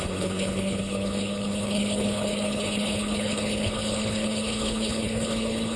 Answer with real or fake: fake